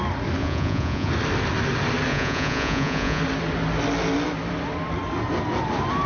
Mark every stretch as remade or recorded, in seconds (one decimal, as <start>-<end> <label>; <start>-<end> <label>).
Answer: 0.0-0.4 recorded; 0.4-1.1 remade; 1.1-2.1 recorded; 2.1-3.2 remade; 3.2-6.1 recorded